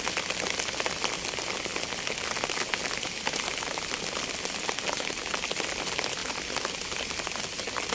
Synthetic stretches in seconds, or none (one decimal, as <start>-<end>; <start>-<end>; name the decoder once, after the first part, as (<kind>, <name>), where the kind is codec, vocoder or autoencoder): none